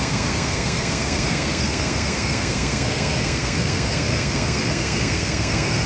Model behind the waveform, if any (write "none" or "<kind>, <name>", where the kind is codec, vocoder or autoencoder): codec, SNAC